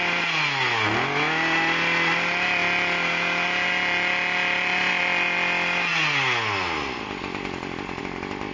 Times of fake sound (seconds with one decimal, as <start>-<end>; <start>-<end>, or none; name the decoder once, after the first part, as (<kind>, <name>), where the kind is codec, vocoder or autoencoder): none